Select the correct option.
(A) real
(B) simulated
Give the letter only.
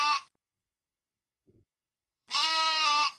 B